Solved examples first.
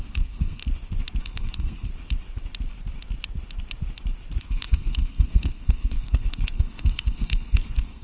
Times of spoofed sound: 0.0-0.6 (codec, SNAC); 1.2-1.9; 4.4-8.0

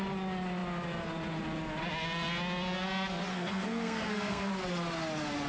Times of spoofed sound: 3.3-4.5 (codec, SNAC)

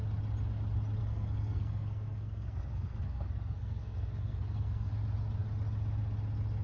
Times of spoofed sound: 1.0-4.9 (codec, SNAC)

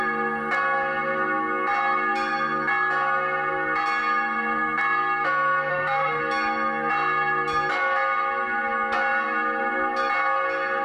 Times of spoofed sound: 5.7-6.2 (codec, SNAC)

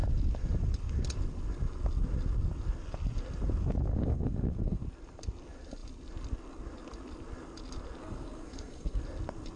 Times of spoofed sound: 3.9-4.8 (codec, SNAC); 8.0-9.0

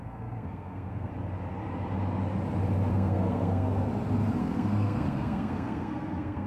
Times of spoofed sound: 0.0-1.1 (codec, SNAC); 2.9-3.9; 4.4-6.5

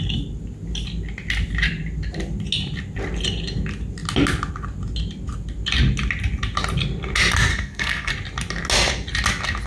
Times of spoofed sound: 7.5-8.1 (codec, SNAC)